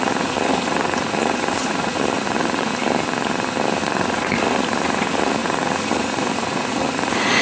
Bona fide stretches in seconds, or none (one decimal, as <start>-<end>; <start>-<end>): 2.7-3.8